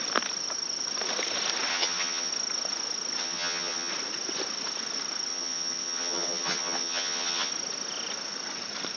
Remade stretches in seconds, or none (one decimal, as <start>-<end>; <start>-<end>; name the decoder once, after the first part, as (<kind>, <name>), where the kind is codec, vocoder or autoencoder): 1.7-2.3 (vocoder, HiFi-GAN); 3.2-3.9; 5.3-7.5